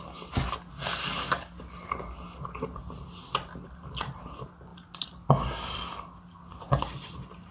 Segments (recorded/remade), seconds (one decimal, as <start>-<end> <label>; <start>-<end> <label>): 0.0-7.5 recorded